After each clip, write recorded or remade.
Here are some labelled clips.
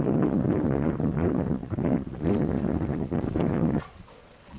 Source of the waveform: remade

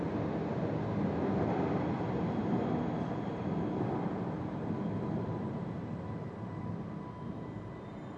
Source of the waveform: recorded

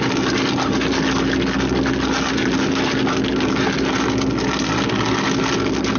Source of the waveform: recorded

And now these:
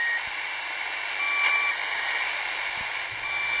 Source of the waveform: recorded